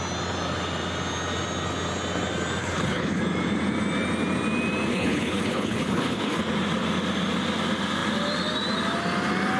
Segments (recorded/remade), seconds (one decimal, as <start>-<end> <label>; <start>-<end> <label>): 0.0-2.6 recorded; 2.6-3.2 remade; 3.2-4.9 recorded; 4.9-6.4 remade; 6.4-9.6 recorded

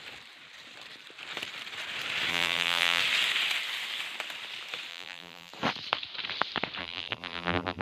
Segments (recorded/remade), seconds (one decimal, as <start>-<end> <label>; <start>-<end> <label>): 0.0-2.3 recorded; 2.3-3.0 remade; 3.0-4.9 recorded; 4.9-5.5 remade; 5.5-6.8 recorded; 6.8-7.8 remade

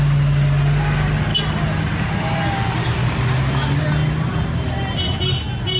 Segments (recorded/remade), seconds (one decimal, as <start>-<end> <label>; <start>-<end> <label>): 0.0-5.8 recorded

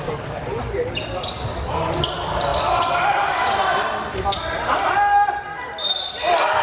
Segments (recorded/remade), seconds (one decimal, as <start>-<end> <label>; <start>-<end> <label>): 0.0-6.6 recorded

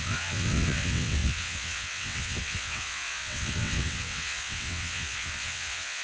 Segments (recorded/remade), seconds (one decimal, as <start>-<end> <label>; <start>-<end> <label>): 0.0-6.0 remade

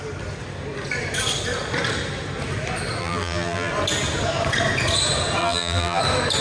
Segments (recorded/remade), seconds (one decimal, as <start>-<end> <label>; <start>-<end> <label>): 0.0-3.0 recorded; 3.0-3.7 remade; 3.7-5.4 recorded; 5.4-6.0 remade; 6.0-6.4 recorded